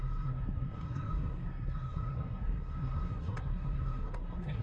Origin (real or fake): fake